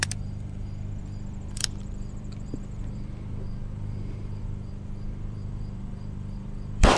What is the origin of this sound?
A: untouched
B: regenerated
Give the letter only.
B